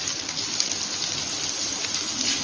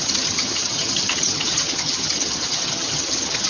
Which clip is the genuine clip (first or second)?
first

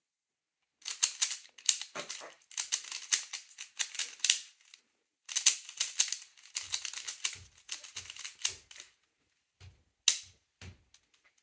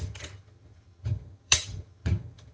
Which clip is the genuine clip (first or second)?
first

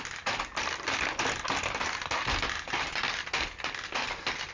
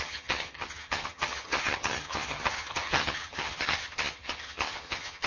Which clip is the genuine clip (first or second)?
first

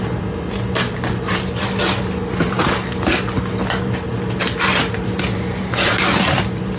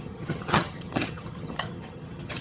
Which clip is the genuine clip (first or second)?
first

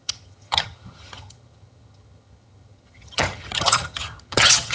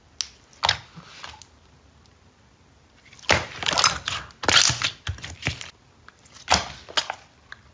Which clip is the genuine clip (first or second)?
second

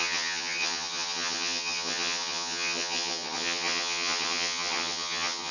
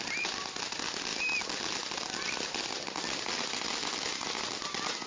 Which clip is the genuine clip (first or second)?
second